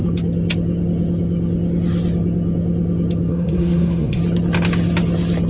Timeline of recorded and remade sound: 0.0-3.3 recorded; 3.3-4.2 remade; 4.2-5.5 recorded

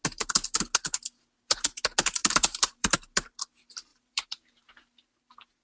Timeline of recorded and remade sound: 0.0-2.2 recorded; 2.2-2.9 remade; 2.9-3.9 recorded; 3.9-4.7 remade; 4.7-5.6 recorded